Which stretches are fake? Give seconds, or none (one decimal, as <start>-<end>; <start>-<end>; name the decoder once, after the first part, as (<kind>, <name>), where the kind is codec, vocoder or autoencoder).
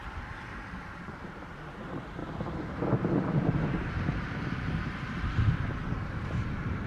1.0-2.2 (vocoder, BigVGAN v2); 5.9-6.9